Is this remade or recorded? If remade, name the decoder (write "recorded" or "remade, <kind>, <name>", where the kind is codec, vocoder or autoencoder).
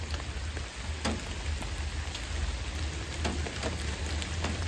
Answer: recorded